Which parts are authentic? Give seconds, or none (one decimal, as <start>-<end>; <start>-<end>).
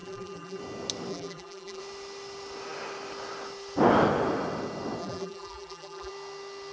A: 0.6-1.1; 1.8-5.0; 6.1-6.7